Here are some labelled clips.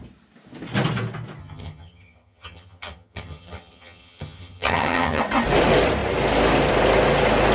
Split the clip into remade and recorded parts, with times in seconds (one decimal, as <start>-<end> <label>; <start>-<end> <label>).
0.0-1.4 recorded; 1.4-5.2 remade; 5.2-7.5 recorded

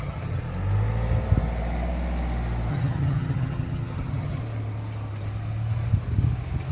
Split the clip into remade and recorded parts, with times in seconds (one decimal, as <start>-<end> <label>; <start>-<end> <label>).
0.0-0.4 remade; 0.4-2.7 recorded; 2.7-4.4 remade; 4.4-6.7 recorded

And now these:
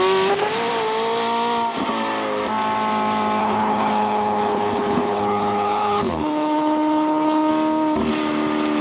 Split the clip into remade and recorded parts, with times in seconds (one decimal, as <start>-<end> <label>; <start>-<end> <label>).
0.0-3.4 recorded; 3.4-7.5 remade; 7.5-8.8 recorded

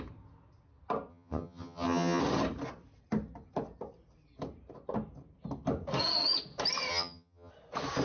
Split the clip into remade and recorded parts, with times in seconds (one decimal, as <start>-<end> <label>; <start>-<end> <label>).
0.0-1.1 recorded; 1.1-2.2 remade; 2.2-6.9 recorded; 6.9-7.5 remade; 7.5-8.0 recorded

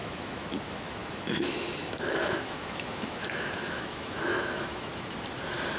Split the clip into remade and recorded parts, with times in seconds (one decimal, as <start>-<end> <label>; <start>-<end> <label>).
0.0-4.9 remade; 4.9-5.8 recorded

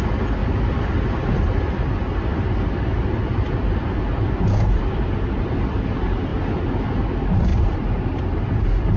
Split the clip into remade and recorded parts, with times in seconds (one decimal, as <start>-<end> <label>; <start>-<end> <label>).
0.0-0.4 recorded; 0.4-1.3 remade; 1.3-9.0 recorded

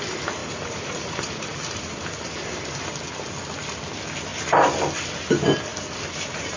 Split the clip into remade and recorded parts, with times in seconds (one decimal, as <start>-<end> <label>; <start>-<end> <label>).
0.0-0.4 recorded; 0.4-2.8 remade; 2.8-5.7 recorded; 5.7-6.6 remade

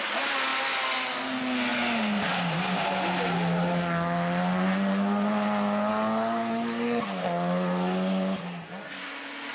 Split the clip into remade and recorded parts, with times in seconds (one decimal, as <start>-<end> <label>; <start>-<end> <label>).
0.0-5.9 recorded; 5.9-7.0 remade; 7.0-9.5 recorded